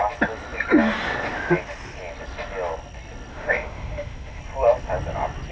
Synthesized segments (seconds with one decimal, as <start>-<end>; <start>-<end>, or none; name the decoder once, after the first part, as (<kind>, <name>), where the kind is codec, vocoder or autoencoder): 3.3-4.4 (autoencoder, DAC-VAE)